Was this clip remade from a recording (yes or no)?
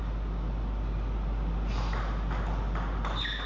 no